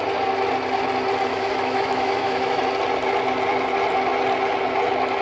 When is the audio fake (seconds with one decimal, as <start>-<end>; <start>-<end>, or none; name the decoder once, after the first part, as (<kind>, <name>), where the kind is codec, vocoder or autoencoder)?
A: 1.3-2.6 (autoencoder, DAC-VAE)